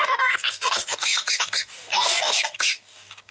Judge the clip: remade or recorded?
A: remade